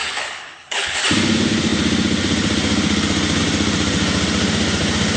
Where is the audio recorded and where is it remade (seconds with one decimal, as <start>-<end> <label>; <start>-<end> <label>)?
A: 0.0-1.0 remade; 1.0-5.2 recorded